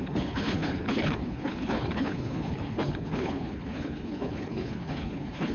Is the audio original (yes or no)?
no